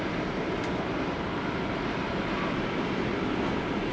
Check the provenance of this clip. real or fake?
real